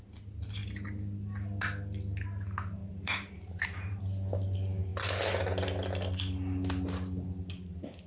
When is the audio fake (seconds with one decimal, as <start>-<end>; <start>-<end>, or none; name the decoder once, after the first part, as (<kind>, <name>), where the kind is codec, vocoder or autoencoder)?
2.8-4.0 (vocoder, BigVGAN v2)